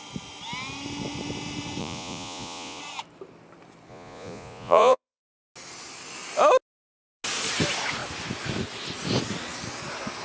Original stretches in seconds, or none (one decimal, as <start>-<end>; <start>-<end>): 0.0-1.8; 2.8-3.9; 5.2-10.2

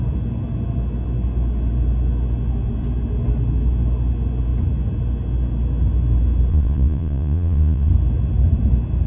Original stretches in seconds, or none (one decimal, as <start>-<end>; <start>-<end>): 0.0-6.5; 7.9-9.1

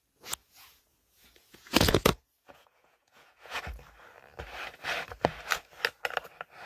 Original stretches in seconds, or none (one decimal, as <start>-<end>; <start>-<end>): 0.0-0.4; 3.6-6.7

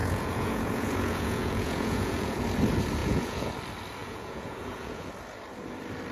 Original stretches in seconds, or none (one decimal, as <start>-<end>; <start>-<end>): 2.4-3.0; 3.5-4.0; 5.1-6.1

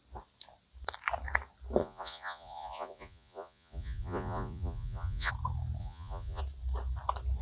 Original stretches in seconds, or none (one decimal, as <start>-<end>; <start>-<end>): 0.0-1.8; 5.3-5.8; 6.4-7.4

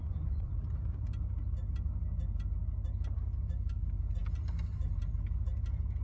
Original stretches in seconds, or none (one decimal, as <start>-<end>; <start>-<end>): 0.5-6.0

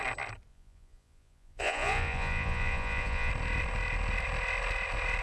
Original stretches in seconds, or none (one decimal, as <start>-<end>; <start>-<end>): 0.0-0.5; 3.3-5.2

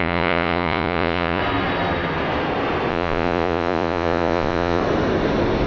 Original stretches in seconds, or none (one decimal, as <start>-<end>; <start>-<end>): 1.4-2.9; 4.8-5.7